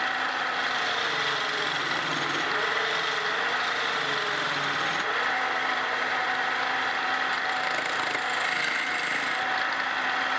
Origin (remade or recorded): recorded